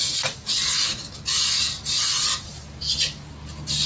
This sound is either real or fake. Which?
real